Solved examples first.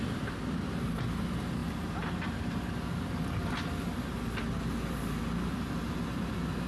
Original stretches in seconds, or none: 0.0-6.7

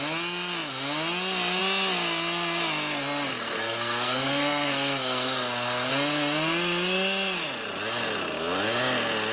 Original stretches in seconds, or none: 0.0-3.3; 5.9-9.3